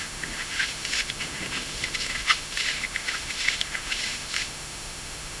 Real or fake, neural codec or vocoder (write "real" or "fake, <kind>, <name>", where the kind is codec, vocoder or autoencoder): fake, autoencoder, DAC-VAE